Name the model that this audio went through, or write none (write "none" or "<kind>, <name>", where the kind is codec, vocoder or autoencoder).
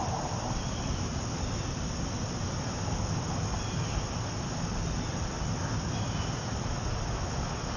none